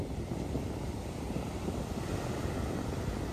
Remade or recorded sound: recorded